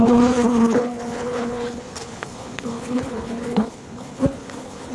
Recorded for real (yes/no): no